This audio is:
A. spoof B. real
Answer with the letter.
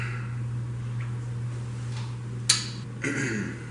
B